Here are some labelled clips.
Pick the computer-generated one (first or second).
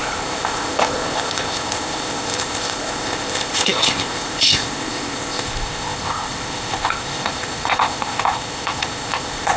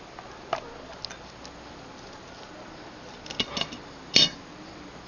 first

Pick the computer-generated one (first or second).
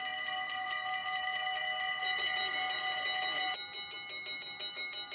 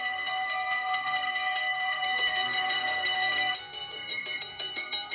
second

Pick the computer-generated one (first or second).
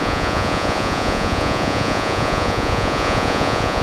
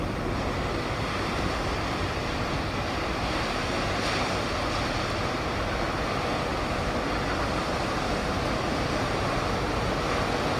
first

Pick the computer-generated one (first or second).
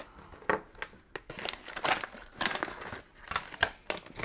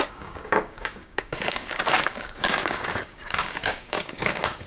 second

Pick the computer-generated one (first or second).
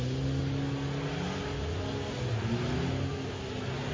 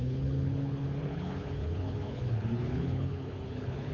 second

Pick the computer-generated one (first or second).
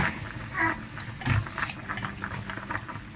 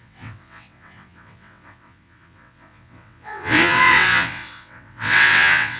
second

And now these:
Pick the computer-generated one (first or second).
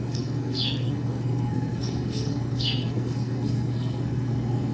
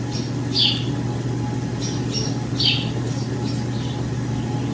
first